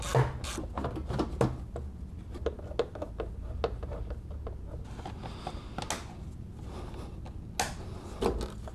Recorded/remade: recorded